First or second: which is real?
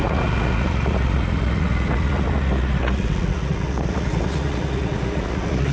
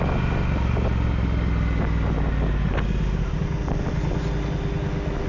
second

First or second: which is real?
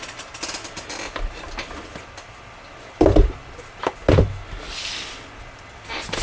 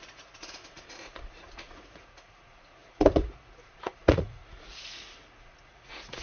first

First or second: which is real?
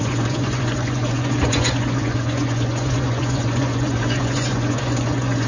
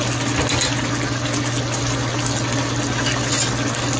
second